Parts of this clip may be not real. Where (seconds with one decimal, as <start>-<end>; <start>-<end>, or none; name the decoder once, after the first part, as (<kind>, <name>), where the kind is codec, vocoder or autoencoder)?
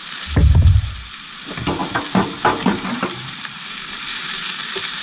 0.0-1.0 (vocoder, BigVGAN v2); 1.8-4.6